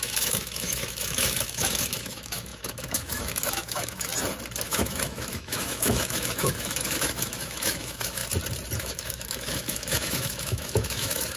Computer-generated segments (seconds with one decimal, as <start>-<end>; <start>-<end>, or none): 0.0-4.1; 4.6-8.2; 8.8-11.4

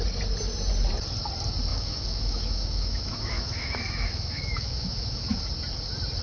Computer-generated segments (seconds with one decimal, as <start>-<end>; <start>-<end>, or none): 1.7-5.4